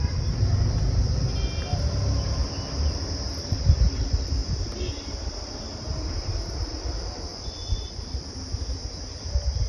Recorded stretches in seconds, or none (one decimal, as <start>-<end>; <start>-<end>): 0.0-7.3; 8.0-9.7